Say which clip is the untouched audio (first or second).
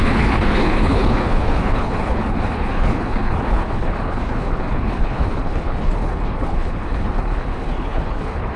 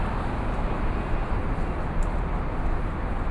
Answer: second